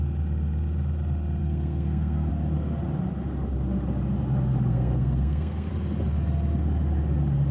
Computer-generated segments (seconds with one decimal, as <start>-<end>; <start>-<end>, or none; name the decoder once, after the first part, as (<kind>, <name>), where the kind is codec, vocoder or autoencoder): 1.4-2.3 (codec, SNAC); 4.7-5.7